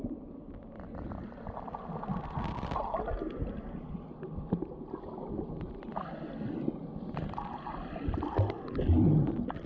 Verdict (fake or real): real